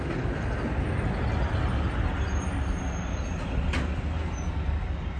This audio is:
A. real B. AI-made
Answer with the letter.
A